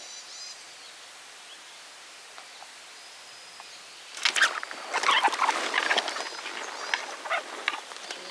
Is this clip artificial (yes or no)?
no